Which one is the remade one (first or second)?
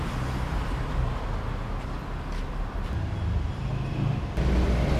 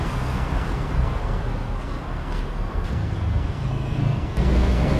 second